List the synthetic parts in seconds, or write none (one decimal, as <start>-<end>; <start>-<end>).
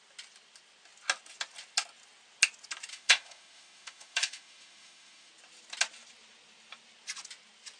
2.9-5.3